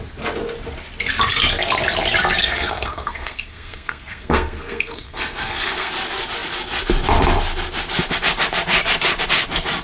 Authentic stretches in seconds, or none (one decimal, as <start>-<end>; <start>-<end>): 0.0-2.4; 5.9-9.8